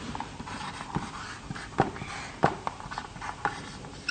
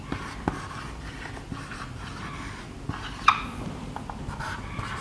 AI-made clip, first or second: first